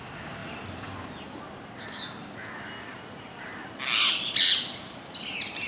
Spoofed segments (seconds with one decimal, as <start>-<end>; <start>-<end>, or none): none